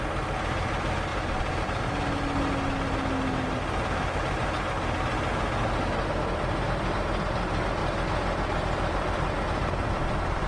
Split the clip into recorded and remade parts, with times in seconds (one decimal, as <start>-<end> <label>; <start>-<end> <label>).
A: 0.0-10.5 recorded